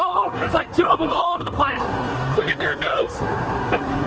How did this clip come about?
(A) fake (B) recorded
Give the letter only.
A